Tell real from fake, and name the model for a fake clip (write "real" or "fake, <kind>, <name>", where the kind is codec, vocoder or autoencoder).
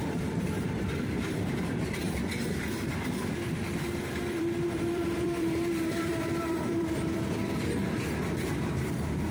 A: fake, vocoder, BigVGAN v2